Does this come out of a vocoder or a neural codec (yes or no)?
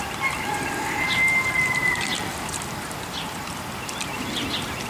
yes